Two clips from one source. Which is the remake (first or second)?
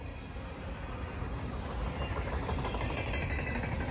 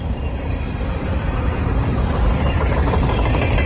second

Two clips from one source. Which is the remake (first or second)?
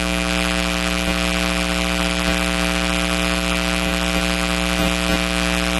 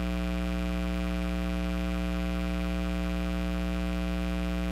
first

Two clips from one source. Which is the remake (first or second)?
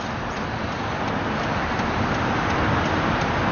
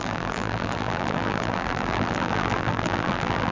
second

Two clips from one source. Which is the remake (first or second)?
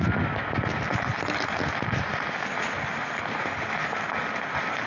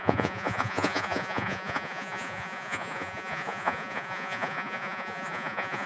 second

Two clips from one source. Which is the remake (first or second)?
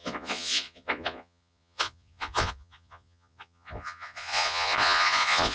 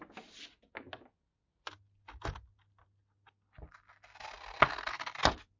first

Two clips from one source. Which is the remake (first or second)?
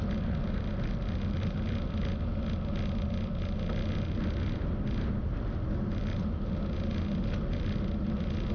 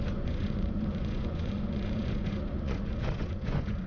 second